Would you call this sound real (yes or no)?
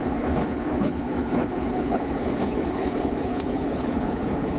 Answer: no